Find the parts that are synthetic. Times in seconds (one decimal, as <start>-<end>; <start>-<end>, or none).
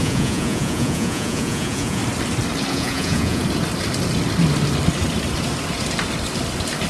0.0-2.0; 2.7-3.4